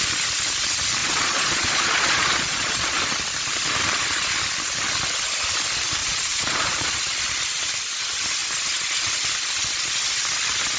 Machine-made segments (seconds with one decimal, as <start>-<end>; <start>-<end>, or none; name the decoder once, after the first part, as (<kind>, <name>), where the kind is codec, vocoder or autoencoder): 1.0-3.0 (vocoder, Vocos); 6.0-7.0